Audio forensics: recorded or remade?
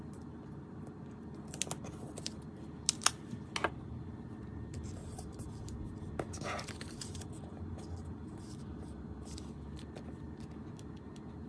recorded